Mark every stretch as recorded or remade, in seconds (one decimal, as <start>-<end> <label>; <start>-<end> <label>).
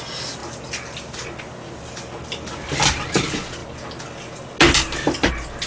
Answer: 0.0-5.7 recorded